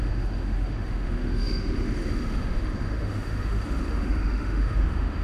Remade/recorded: remade